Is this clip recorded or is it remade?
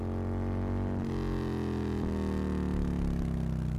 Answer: recorded